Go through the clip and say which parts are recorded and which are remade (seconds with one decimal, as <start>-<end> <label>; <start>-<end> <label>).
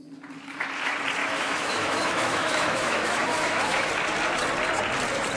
0.0-1.2 recorded; 1.2-3.9 remade; 3.9-5.4 recorded